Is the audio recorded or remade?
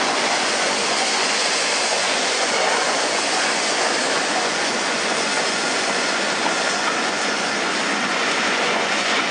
remade